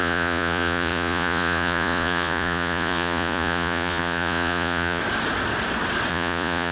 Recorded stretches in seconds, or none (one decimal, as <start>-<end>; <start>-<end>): 5.0-6.1